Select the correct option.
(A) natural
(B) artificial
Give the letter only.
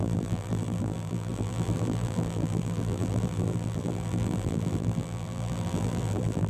B